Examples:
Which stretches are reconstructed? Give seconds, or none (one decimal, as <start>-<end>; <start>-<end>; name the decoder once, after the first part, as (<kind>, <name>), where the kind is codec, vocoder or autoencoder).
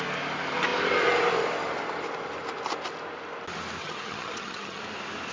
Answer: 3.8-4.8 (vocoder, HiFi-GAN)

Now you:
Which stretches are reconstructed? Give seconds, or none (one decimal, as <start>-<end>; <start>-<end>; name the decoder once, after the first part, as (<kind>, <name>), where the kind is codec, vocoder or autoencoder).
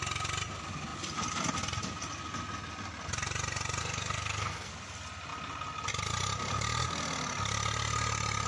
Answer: 3.8-4.7 (codec, SNAC)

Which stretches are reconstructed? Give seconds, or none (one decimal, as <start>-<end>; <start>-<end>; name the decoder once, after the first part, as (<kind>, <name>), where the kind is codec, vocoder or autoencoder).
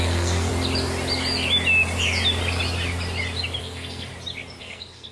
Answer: 0.0-0.5 (codec, SNAC); 3.6-4.1; 4.6-5.1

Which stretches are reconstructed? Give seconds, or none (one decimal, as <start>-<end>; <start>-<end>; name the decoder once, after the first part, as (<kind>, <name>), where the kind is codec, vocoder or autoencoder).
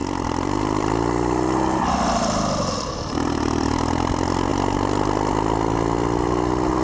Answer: 0.0-3.7 (vocoder, BigVGAN v2)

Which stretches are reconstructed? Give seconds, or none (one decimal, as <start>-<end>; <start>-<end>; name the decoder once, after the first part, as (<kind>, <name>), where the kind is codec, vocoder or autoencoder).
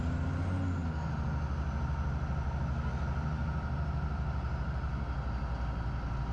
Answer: none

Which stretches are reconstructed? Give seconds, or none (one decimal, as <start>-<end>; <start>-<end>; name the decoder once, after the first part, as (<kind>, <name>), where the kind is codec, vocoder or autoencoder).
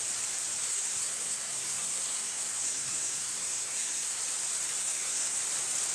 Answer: 0.7-4.2 (codec, SNAC); 4.8-5.4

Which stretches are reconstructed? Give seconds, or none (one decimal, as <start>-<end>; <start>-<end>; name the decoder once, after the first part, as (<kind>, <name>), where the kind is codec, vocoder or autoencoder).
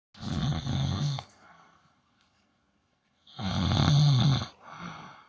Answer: 0.7-3.5 (codec, SNAC)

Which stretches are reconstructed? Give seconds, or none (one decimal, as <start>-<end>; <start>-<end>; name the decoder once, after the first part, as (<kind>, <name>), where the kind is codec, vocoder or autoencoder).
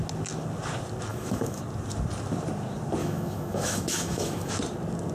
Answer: 1.1-1.6 (autoencoder, DAC-VAE); 3.0-4.5